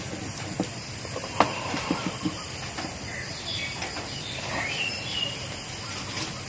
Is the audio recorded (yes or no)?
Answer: yes